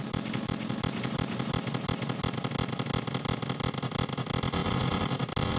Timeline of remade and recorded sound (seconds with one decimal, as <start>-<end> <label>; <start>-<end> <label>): 0.0-5.6 recorded